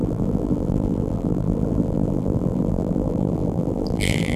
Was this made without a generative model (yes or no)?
no